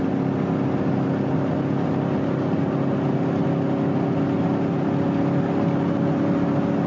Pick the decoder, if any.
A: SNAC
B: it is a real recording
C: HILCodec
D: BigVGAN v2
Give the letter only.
B